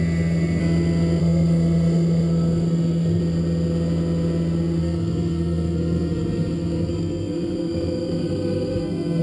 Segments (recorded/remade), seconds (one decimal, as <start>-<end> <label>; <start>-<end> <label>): 0.0-0.6 remade; 0.6-1.2 recorded; 1.2-3.2 remade; 3.2-4.8 recorded; 4.8-9.2 remade